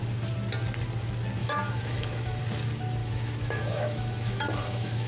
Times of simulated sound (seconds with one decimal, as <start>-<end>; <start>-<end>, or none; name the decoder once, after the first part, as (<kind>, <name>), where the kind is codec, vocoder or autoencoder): 1.4-2.4 (autoencoder, DAC-VAE); 3.0-5.1